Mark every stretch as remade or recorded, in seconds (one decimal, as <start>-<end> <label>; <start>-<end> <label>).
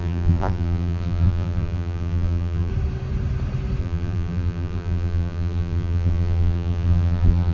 0.0-2.7 remade; 2.7-3.8 recorded; 3.8-7.5 remade